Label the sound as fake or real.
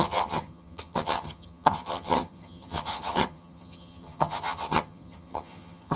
fake